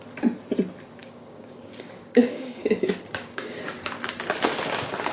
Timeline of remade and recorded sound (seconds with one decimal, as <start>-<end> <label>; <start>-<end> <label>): 0.0-1.0 recorded; 1.0-4.1 remade; 4.1-5.1 recorded